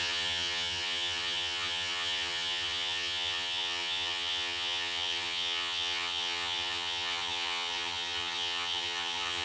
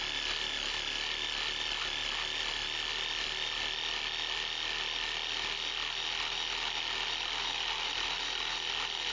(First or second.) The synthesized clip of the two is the first